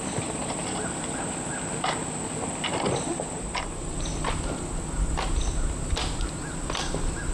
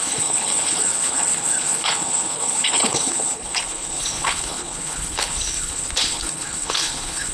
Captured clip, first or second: first